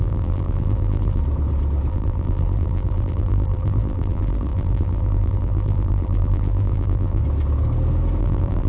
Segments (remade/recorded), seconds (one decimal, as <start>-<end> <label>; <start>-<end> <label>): 0.0-1.2 remade; 1.2-1.9 recorded; 1.9-7.2 remade; 7.2-8.2 recorded; 8.2-8.7 remade